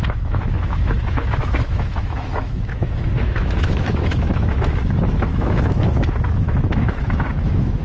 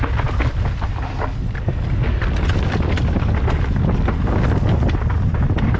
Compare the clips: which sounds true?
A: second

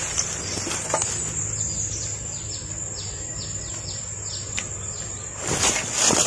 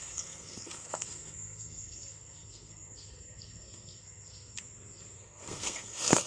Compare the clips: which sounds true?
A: first